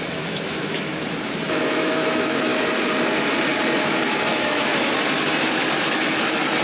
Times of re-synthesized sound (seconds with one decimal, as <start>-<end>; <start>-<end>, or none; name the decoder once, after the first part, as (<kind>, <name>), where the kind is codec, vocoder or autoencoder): 0.0-0.9 (autoencoder, DAC-VAE); 1.4-2.5; 3.8-4.7; 5.8-6.6